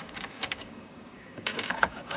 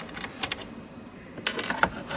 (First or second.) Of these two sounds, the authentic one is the second